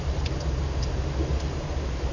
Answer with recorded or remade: remade